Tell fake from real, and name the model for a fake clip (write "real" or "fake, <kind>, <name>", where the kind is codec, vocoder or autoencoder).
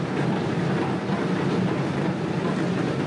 real